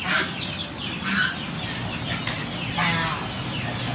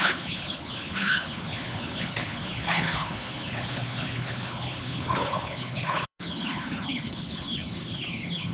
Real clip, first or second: first